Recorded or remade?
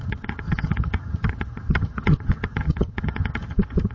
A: remade